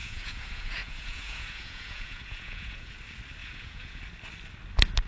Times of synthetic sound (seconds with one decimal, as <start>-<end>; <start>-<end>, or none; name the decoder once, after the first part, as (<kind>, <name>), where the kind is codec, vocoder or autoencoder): 0.0-2.9 (vocoder, Vocos); 3.4-4.0